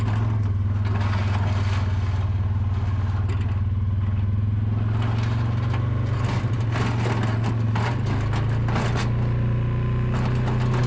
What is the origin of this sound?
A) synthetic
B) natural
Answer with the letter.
B